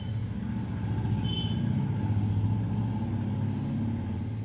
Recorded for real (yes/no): yes